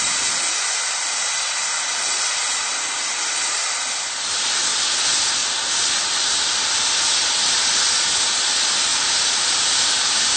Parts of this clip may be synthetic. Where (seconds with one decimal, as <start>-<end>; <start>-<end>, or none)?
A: 8.9-10.4